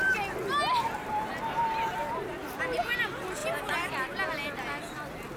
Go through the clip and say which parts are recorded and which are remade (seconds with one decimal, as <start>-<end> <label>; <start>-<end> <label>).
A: 0.0-5.4 recorded